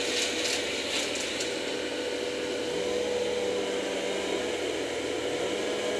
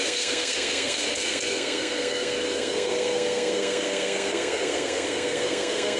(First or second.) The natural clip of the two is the first